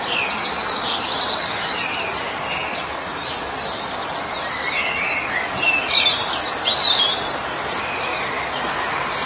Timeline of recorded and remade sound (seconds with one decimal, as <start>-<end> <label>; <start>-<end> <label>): 0.0-2.6 remade; 2.6-3.2 recorded; 3.2-8.1 remade; 8.1-8.8 recorded; 8.8-9.3 remade